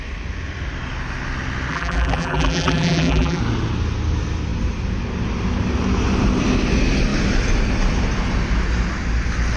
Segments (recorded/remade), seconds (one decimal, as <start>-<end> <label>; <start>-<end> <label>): 0.0-1.7 recorded; 1.7-3.4 remade; 3.4-9.6 recorded